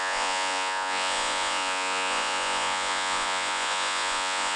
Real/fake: fake